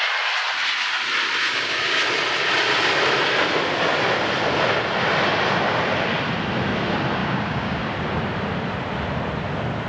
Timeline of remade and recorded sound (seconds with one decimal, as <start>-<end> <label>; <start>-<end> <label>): 0.0-1.4 recorded; 1.4-2.0 remade; 2.0-7.2 recorded; 7.2-7.8 remade; 7.8-9.9 recorded